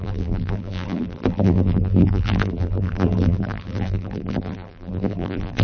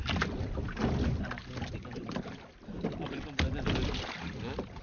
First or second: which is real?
second